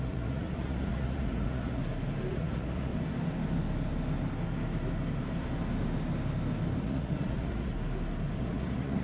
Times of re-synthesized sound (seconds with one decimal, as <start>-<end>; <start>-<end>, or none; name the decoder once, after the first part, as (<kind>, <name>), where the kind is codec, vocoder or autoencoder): 0.0-1.8 (vocoder, Vocos); 2.3-2.9; 6.8-7.7; 8.4-9.0